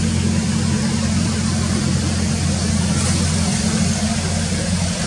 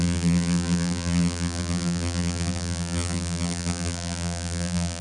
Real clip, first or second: first